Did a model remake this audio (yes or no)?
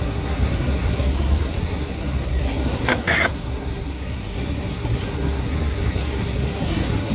yes